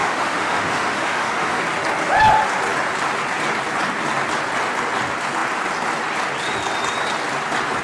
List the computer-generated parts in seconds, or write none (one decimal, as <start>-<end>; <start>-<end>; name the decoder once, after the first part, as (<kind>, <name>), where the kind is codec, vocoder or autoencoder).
0.0-1.6 (autoencoder, DAC-VAE)